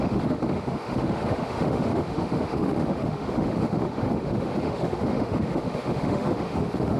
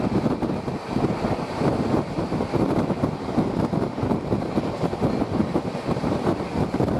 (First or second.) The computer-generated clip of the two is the first